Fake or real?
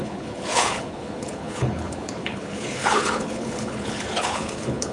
fake